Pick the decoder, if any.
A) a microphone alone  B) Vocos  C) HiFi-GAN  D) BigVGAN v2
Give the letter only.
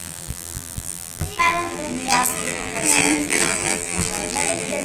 D